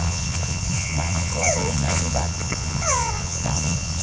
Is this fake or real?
fake